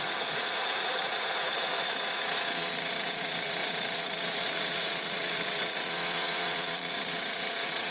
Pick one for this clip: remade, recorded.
remade